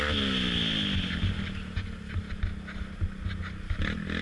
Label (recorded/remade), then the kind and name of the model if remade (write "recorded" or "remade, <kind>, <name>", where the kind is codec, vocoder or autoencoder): recorded